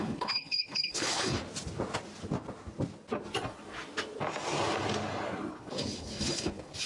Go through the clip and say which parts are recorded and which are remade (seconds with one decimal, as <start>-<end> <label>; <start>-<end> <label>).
0.0-1.4 remade; 1.4-5.5 recorded; 5.5-6.9 remade